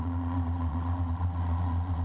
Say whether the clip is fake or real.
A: fake